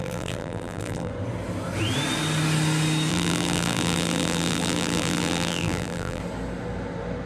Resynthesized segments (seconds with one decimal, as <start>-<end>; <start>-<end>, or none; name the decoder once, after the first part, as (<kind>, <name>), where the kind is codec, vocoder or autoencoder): 0.0-1.1 (vocoder, BigVGAN v2); 3.1-6.2